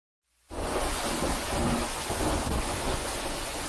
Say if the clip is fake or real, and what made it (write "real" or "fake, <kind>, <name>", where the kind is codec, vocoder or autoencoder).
fake, vocoder, Vocos